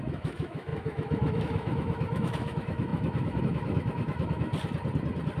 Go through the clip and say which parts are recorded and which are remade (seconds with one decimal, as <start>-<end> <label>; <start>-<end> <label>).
0.0-4.5 remade; 4.5-5.4 recorded